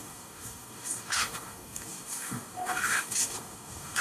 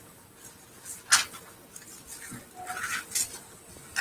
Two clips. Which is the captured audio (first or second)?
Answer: second